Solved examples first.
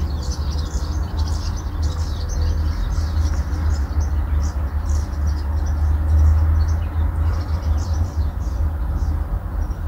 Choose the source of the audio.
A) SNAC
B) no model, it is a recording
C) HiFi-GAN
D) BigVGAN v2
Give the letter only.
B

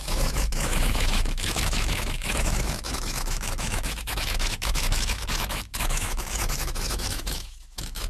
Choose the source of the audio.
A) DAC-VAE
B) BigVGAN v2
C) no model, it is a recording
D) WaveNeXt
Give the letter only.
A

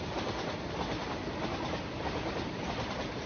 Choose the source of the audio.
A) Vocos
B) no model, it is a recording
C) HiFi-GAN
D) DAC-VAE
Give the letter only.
B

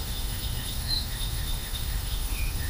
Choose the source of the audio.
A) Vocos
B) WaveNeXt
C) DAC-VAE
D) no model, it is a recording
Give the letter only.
C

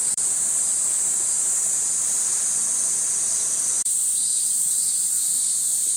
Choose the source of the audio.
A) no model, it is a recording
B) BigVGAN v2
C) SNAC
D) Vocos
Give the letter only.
B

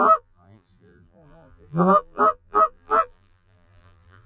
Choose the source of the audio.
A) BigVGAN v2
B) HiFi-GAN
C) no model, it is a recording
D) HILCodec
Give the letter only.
A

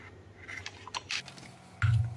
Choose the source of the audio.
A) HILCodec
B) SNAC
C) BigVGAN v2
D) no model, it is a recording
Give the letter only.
D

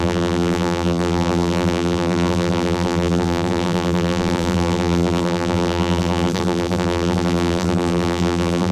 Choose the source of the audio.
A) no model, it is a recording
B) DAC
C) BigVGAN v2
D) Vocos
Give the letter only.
C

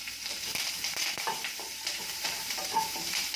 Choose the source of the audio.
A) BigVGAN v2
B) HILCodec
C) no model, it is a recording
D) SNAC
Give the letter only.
A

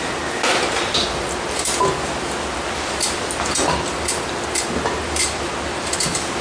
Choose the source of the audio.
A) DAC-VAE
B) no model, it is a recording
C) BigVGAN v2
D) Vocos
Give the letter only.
B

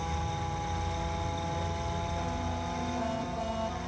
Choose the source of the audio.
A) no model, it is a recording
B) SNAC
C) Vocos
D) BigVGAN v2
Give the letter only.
A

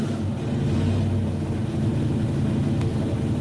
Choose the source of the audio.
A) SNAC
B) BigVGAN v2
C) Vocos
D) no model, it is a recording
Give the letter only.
D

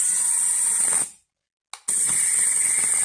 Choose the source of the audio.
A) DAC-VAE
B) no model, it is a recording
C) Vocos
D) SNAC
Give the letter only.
B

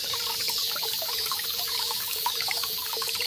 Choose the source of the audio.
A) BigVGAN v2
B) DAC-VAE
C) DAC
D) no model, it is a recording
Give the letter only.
C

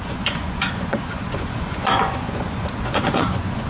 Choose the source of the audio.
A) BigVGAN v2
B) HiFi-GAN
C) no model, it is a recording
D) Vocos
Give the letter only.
D